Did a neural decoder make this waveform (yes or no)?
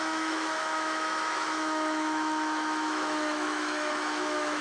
yes